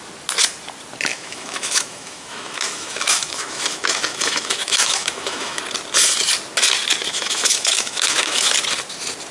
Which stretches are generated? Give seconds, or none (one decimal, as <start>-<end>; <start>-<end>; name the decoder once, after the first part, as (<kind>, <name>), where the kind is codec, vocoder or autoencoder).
1.1-5.6 (autoencoder, DAC-VAE); 7.1-8.5